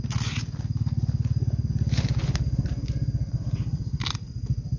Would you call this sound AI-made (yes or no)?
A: no